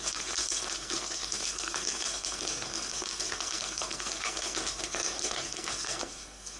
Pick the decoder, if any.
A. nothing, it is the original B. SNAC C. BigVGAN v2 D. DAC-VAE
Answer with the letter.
B